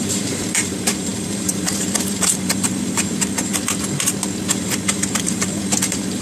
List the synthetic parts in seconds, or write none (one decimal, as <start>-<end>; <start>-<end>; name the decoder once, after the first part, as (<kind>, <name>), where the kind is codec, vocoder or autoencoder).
0.0-3.5 (vocoder, BigVGAN v2); 4.5-6.2